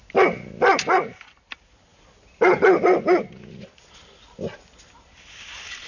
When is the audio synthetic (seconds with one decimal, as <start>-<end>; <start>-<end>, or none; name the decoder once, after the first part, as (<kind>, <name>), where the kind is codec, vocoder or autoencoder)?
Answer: none